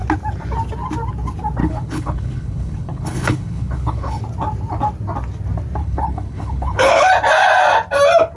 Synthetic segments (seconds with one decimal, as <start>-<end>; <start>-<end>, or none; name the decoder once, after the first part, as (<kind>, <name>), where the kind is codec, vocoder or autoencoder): 1.6-4.2 (codec, HILCodec); 5.8-7.1